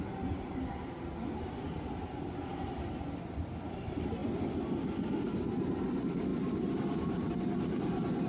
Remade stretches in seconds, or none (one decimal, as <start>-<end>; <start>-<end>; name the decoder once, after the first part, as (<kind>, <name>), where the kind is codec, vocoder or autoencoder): 4.2-5.3 (vocoder, BigVGAN v2); 6.3-7.3